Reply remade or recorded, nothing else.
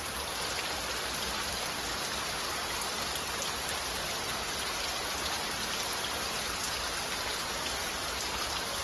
recorded